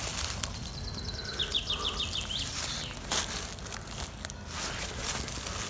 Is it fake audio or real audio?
real